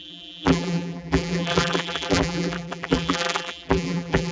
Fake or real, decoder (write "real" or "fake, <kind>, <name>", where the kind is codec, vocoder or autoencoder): fake, vocoder, BigVGAN v2